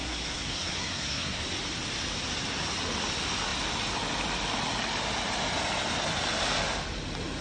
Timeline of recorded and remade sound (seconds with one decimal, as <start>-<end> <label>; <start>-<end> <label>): 0.0-1.4 remade; 1.4-7.4 recorded